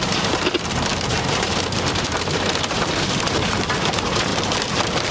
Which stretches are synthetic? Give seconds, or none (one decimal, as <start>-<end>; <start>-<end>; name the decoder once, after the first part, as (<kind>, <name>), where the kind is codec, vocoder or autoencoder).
0.0-5.1 (vocoder, BigVGAN v2)